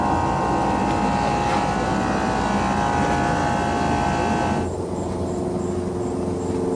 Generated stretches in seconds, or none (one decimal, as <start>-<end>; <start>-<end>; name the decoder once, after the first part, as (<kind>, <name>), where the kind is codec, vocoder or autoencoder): none